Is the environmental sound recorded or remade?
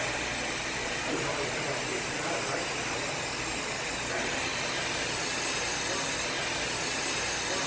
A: recorded